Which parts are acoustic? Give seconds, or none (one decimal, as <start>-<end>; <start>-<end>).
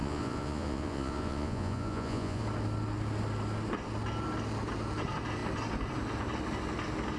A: 2.4-7.2